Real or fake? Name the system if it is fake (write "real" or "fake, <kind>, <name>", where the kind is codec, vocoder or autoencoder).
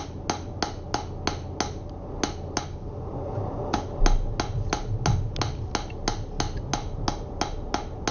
real